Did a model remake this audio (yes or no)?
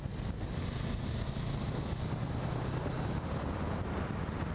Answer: no